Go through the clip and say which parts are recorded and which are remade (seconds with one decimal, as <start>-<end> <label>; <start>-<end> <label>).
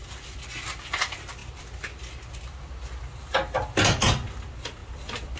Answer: 0.0-5.4 recorded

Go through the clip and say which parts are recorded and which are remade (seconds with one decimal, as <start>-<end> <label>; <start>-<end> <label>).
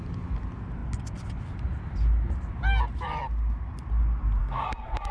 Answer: 0.0-4.4 recorded; 4.4-5.1 remade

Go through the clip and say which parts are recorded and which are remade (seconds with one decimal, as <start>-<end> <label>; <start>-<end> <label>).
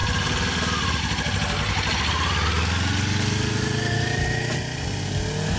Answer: 0.0-5.6 recorded